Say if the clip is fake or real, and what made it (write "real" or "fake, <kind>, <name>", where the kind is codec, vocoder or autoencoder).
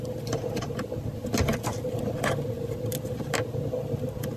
real